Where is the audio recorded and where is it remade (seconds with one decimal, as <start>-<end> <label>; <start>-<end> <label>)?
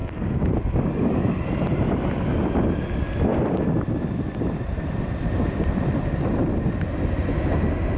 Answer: 0.0-3.3 recorded; 3.3-7.3 remade; 7.3-8.0 recorded